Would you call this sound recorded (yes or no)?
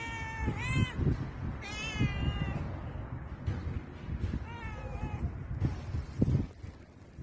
yes